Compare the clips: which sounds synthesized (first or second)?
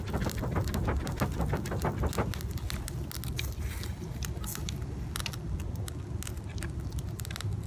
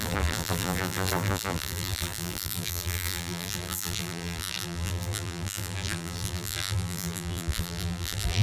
second